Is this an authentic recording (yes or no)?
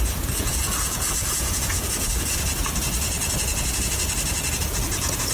no